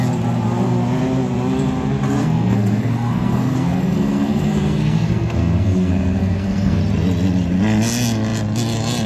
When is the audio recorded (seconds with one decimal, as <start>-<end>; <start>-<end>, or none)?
0.0-2.2; 6.8-9.1